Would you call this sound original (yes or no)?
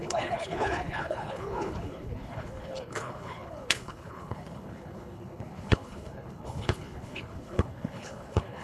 no